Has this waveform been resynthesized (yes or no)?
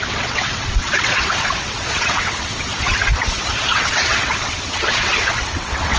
yes